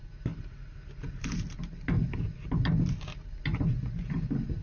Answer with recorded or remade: recorded